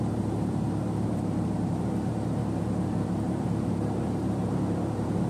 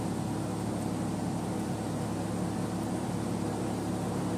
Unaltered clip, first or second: second